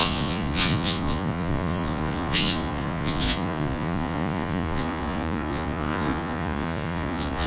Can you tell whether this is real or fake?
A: fake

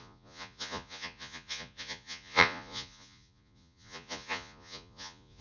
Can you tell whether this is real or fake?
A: fake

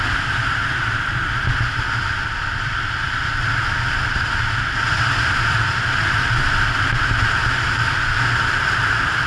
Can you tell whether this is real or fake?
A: real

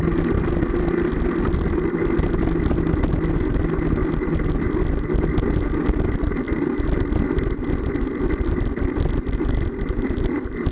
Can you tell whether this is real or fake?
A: real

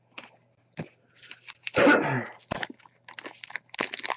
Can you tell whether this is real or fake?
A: real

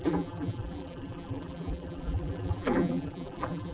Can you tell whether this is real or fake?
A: fake